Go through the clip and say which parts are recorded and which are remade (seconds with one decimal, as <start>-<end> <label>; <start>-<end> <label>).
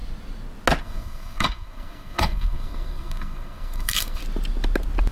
0.0-0.8 recorded; 0.8-4.2 remade; 4.2-5.1 recorded